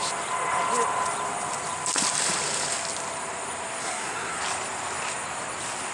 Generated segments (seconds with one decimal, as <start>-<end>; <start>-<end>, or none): 3.8-4.4